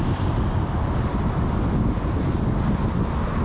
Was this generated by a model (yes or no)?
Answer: no